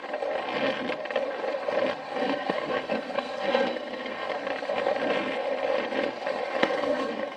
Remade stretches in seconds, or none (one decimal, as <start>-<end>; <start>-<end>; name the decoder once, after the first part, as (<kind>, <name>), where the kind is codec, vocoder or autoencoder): 2.1-4.3 (codec, SNAC); 6.6-7.4